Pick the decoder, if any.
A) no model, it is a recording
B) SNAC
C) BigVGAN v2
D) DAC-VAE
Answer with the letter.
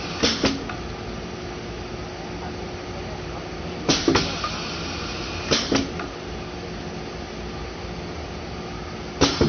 A